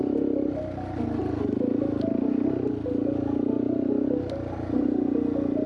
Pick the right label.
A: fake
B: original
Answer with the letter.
B